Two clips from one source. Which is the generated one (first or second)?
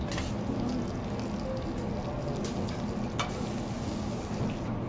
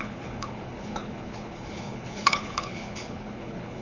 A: second